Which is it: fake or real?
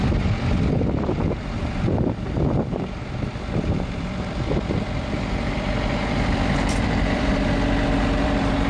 fake